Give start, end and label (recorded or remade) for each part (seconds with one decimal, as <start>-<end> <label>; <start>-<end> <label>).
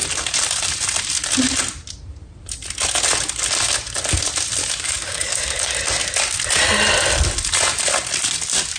0.0-4.6 recorded; 4.6-5.7 remade; 5.7-8.8 recorded